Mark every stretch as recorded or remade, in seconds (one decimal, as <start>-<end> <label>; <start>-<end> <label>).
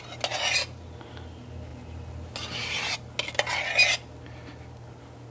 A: 0.0-5.3 recorded